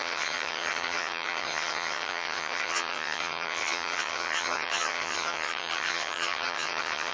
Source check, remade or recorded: remade